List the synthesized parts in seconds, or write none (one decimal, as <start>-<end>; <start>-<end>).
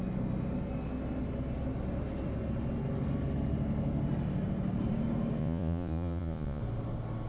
5.4-6.6